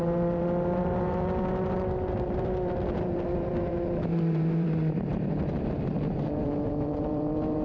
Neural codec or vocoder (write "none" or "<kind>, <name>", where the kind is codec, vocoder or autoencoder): vocoder, BigVGAN v2